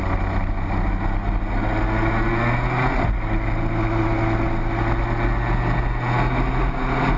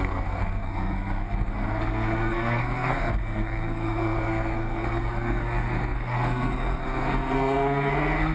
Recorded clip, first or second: first